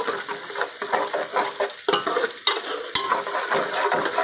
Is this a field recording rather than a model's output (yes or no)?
yes